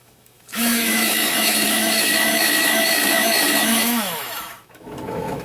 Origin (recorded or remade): remade